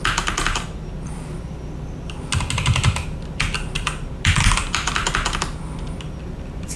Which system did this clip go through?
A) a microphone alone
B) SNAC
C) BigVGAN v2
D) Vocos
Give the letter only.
A